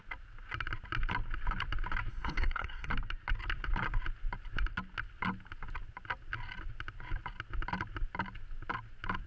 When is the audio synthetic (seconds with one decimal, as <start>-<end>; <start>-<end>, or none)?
2.1-2.9